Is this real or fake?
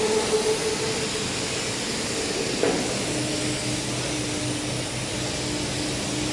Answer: real